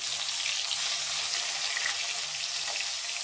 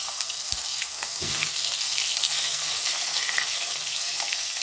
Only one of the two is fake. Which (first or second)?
second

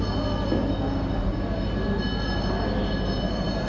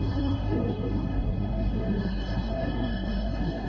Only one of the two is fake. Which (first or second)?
second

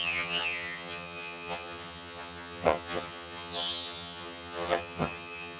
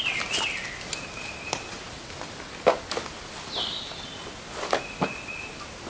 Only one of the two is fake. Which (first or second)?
first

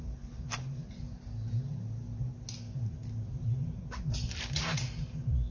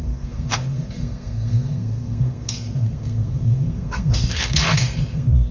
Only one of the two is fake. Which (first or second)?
second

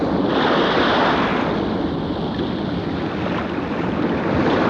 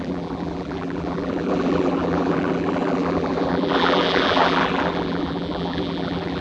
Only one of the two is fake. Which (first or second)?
second